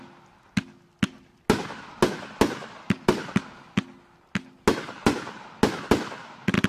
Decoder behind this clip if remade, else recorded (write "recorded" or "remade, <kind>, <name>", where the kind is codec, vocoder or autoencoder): recorded